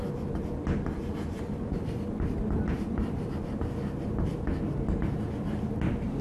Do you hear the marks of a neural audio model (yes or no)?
no